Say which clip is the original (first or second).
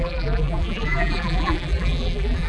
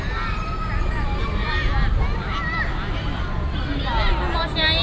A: second